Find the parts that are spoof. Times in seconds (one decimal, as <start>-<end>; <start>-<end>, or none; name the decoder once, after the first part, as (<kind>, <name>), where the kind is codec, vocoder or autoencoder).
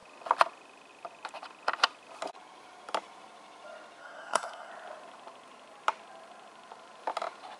4.0-4.7 (codec, SNAC)